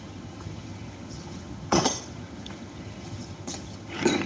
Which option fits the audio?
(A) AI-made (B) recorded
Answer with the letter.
A